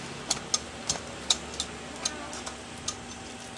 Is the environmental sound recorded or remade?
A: recorded